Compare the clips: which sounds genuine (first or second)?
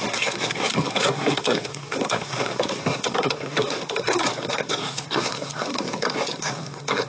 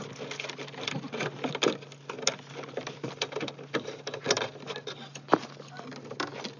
second